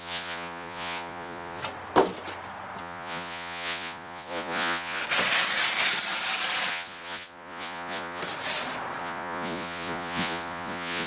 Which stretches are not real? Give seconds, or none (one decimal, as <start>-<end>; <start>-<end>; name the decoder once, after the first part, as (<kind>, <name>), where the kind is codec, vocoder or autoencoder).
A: 0.0-1.6 (vocoder, Vocos); 2.8-5.0; 6.7-8.2; 9.0-11.1